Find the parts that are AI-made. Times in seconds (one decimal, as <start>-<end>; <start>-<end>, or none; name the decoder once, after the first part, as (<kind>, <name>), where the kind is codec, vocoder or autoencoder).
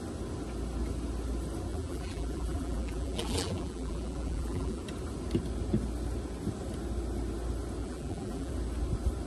1.7-4.8 (vocoder, BigVGAN v2); 7.8-8.5